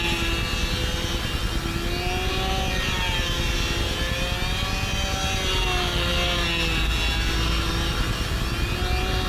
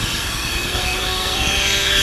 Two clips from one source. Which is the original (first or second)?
first